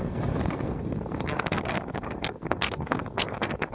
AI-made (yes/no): yes